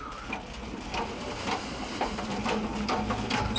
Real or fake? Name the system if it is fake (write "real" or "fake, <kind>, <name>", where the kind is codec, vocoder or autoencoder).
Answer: real